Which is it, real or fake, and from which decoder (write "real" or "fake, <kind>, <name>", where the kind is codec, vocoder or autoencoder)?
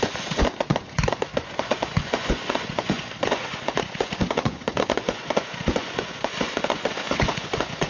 fake, vocoder, Vocos